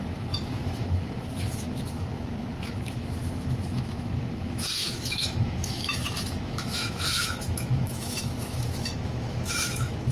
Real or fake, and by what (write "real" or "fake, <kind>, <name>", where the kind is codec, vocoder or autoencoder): fake, autoencoder, DAC-VAE